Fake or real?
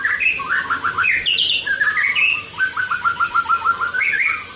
real